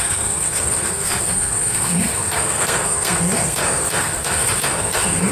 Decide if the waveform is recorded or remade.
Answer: remade